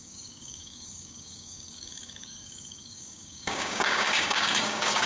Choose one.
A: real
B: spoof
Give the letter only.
B